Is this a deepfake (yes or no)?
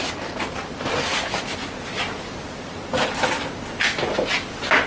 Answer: no